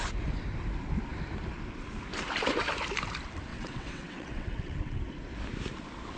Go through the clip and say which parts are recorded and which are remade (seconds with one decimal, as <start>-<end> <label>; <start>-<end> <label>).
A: 0.0-3.5 recorded; 3.5-5.0 remade; 5.0-6.2 recorded

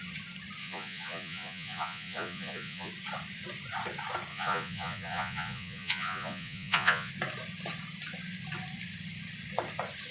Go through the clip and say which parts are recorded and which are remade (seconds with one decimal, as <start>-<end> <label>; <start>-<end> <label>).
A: 0.0-0.6 recorded; 0.6-2.9 remade; 2.9-4.3 recorded; 4.3-7.1 remade; 7.1-10.1 recorded